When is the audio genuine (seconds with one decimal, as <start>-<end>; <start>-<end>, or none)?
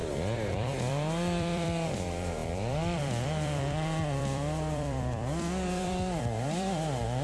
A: 0.0-0.5